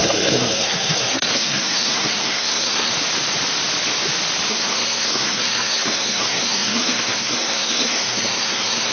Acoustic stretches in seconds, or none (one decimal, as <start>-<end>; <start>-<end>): 2.9-4.5